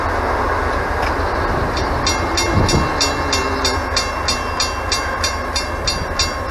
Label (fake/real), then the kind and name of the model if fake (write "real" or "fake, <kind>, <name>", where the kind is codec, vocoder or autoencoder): real